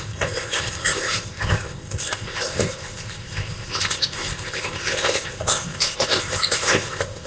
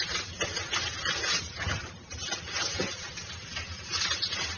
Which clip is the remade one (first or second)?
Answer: first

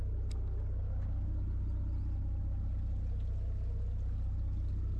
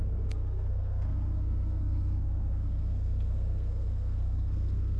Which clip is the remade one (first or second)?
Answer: second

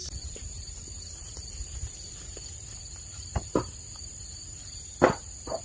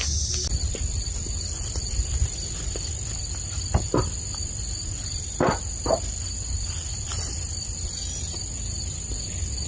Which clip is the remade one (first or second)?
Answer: first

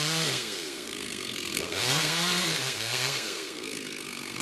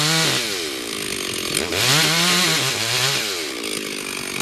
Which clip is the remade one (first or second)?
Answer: first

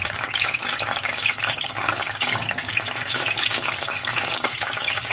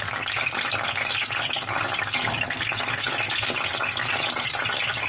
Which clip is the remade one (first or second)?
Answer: first